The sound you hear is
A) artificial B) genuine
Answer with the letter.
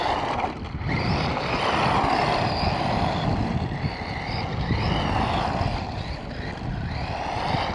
B